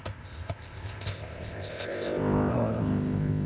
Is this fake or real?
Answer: fake